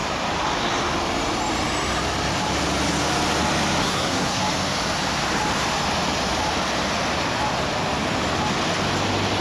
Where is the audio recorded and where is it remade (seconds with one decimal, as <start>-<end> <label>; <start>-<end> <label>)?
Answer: 0.0-3.8 recorded; 3.8-4.4 remade; 4.4-9.4 recorded